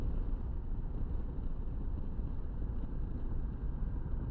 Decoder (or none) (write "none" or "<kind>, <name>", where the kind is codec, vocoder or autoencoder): none